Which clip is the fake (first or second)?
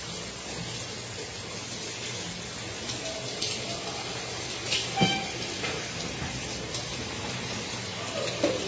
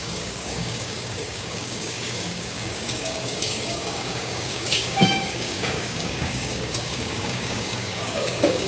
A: second